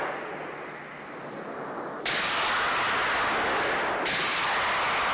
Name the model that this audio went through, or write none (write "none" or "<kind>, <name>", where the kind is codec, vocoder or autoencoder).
none